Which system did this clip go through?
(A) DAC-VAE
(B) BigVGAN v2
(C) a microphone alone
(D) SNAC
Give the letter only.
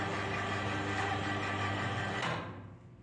C